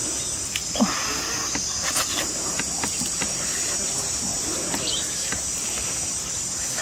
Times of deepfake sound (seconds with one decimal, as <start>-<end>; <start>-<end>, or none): 4.3-5.1